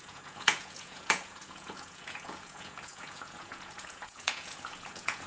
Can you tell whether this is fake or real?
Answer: fake